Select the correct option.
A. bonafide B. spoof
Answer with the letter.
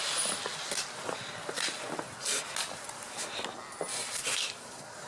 A